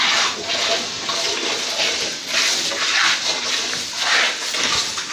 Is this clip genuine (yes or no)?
no